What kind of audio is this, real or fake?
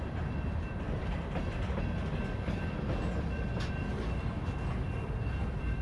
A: real